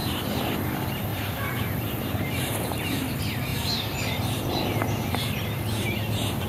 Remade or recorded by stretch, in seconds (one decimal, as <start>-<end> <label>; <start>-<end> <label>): 0.0-0.6 remade; 0.6-1.1 recorded; 1.1-3.0 remade; 3.0-3.5 recorded; 3.5-4.7 remade; 4.7-6.5 recorded